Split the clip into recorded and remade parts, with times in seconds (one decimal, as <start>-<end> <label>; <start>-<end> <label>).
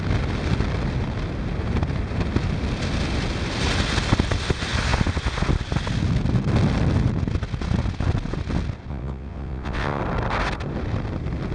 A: 0.0-8.9 recorded; 8.9-10.0 remade; 10.0-11.5 recorded